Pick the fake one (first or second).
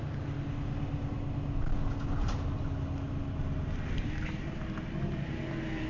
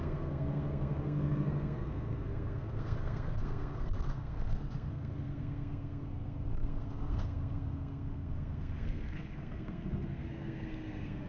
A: second